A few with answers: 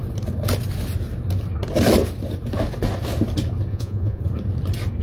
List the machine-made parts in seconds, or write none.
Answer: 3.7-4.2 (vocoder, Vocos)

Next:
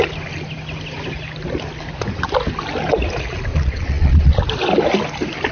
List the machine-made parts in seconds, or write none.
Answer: 3.5-4.4 (vocoder, Vocos)

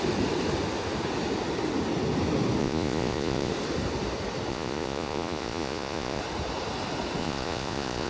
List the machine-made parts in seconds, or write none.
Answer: 2.6-3.5 (vocoder, Vocos); 4.5-6.2; 7.2-8.1

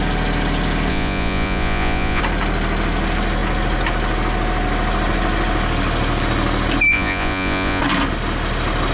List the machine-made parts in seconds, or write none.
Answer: 0.9-2.2 (vocoder, Vocos); 6.9-7.8

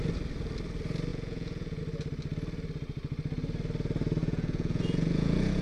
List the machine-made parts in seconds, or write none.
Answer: 1.1-1.8 (vocoder, Vocos); 4.2-5.6

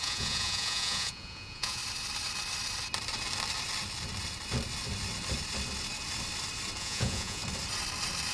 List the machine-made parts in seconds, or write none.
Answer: 0.0-1.8 (vocoder, Vocos); 6.8-7.4

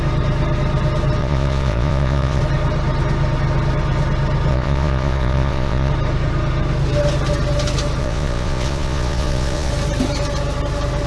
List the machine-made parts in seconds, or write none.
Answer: 1.2-2.4 (vocoder, Vocos); 4.5-5.9; 8.0-9.7